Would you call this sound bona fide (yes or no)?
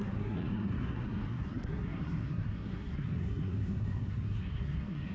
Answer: no